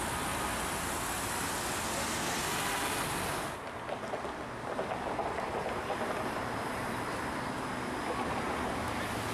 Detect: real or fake real